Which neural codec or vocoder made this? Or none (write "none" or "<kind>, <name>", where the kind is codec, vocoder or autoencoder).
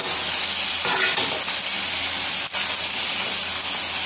none